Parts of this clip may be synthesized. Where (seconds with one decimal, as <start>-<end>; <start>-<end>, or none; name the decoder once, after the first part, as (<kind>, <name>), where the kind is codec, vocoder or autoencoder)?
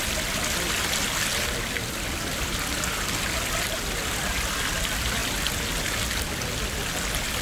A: none